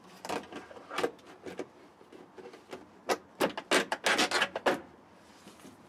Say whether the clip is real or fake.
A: real